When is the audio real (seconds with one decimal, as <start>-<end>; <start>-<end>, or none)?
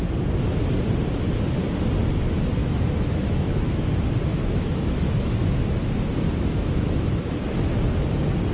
0.0-2.6; 3.9-4.3; 7.3-8.5